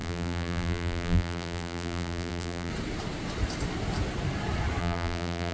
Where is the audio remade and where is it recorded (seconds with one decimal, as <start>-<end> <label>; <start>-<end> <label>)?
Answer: 0.0-2.7 remade; 2.7-4.8 recorded; 4.8-5.5 remade